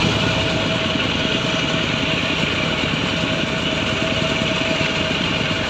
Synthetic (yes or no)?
no